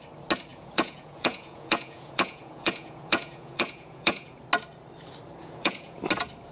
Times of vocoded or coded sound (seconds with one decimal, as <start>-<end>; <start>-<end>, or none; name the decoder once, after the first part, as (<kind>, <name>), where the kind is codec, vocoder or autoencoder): 0.5-4.4 (vocoder, Vocos); 5.4-6.0